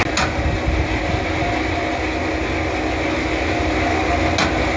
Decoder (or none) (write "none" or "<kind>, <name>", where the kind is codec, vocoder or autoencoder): none